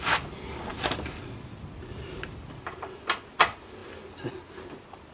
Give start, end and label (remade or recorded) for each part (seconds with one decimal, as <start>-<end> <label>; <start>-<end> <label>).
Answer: 0.0-5.1 recorded